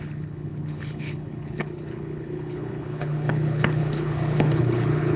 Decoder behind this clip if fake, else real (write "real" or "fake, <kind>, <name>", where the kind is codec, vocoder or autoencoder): fake, codec, HILCodec